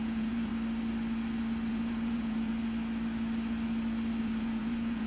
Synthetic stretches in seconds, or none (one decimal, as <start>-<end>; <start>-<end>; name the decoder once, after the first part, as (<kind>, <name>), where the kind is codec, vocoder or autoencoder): 0.0-0.5 (vocoder, Vocos); 1.7-2.5; 4.2-5.1